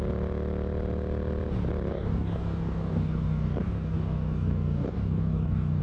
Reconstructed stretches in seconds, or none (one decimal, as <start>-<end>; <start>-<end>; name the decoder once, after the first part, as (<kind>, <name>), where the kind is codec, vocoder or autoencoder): 1.9-5.8 (codec, DAC)